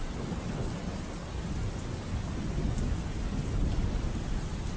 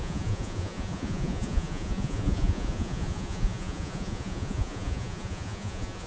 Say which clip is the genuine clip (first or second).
first